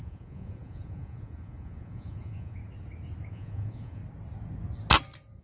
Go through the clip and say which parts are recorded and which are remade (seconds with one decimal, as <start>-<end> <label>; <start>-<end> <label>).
0.0-2.6 remade; 2.6-3.3 recorded; 3.3-4.0 remade; 4.0-5.4 recorded